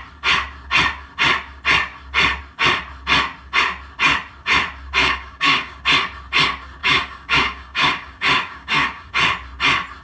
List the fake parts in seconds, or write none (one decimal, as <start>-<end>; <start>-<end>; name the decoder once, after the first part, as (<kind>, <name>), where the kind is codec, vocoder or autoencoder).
5.0-5.8 (codec, DAC); 6.8-9.1